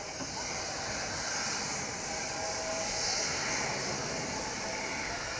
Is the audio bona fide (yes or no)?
yes